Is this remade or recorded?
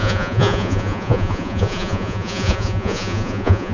remade